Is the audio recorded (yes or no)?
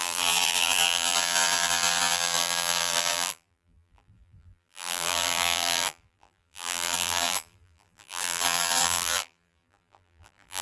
no